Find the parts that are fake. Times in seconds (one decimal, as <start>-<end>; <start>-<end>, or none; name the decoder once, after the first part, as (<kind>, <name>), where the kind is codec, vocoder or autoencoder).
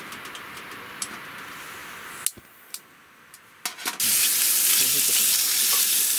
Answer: none